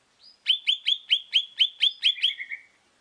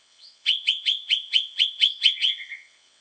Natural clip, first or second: first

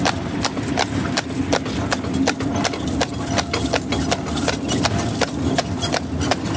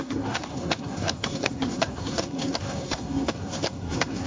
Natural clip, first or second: first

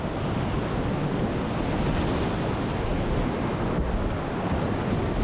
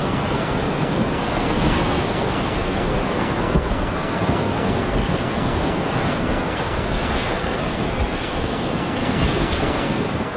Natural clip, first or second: first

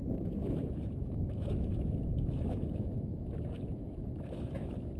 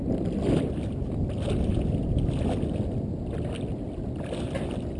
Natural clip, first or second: second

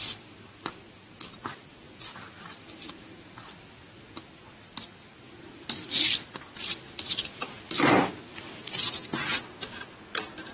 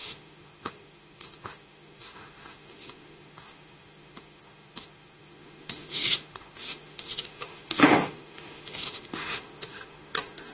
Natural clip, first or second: first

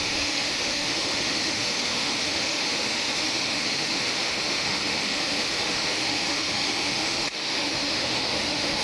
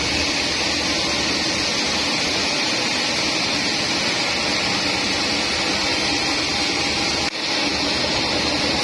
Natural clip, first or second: second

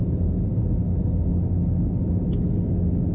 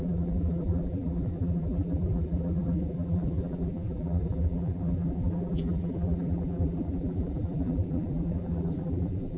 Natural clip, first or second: first